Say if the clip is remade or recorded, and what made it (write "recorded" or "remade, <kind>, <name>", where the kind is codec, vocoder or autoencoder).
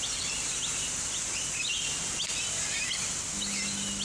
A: recorded